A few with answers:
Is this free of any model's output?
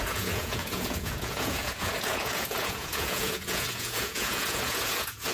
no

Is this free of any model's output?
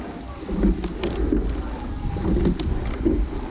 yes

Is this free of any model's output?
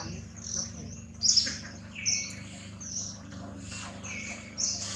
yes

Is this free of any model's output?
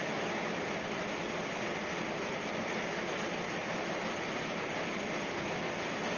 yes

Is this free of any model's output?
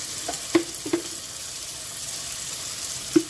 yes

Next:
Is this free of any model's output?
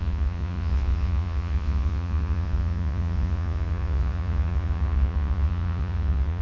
no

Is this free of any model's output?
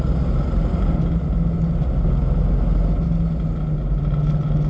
yes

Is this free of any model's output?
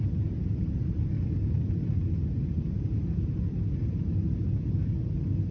yes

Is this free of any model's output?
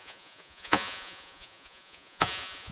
no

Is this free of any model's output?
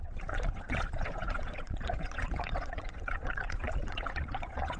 no